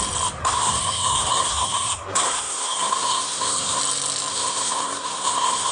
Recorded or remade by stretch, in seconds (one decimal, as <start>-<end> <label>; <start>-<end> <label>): 0.0-0.4 recorded; 0.4-3.8 remade; 3.8-4.3 recorded; 4.3-5.7 remade